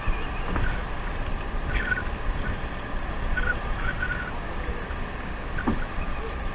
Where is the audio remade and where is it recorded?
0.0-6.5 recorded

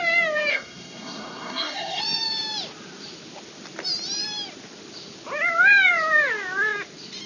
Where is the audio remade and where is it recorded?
0.0-0.5 recorded; 0.5-2.0 remade; 2.0-7.3 recorded

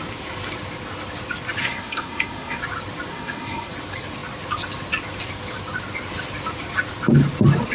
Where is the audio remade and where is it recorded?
0.0-1.6 recorded; 1.6-2.6 remade; 2.6-3.1 recorded; 3.1-3.7 remade; 3.7-7.7 recorded

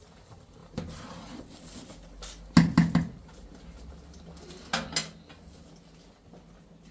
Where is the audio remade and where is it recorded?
0.0-0.6 recorded; 0.6-1.4 remade; 1.4-3.2 recorded; 3.2-3.9 remade; 3.9-6.9 recorded

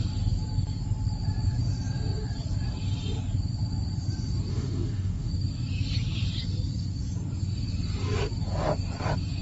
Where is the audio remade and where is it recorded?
0.0-4.5 recorded; 4.5-5.3 remade; 5.3-9.4 recorded

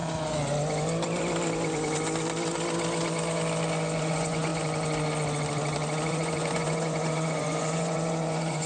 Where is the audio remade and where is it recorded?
0.0-4.0 recorded; 4.0-4.5 remade; 4.5-6.1 recorded; 6.1-8.7 remade